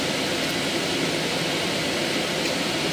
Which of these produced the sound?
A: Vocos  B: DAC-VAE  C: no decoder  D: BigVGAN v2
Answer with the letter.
C